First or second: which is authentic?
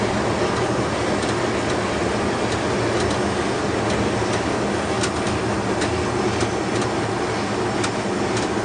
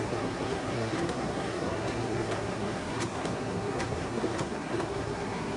first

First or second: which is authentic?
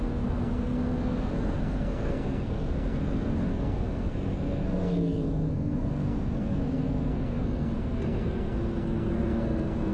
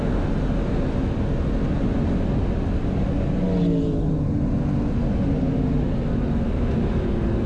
second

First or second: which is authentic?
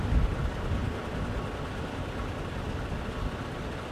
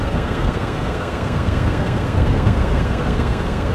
first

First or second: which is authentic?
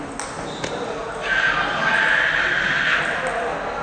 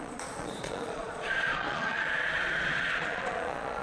first